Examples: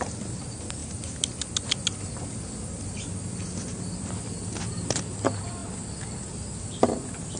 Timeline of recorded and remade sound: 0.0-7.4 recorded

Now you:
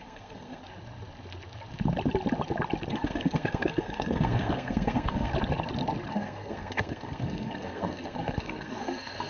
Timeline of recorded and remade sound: 0.0-0.6 remade; 0.6-2.9 recorded; 2.9-5.3 remade; 5.3-6.1 recorded; 6.1-9.3 remade

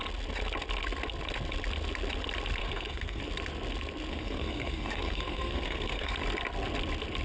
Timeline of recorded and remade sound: 0.0-2.6 recorded; 2.6-3.2 remade; 3.2-4.1 recorded; 4.1-6.1 remade; 6.1-7.2 recorded

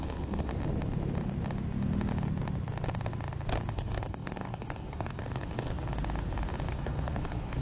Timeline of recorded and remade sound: 0.0-0.5 remade; 0.5-3.7 recorded; 3.7-5.7 remade; 5.7-6.7 recorded; 6.7-7.6 remade